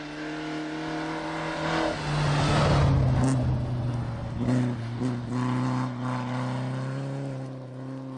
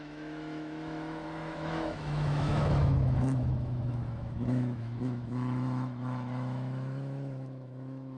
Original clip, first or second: first